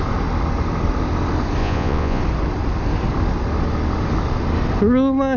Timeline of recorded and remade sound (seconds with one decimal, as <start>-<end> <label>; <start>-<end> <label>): 0.0-1.6 recorded; 1.6-2.2 remade; 2.2-5.4 recorded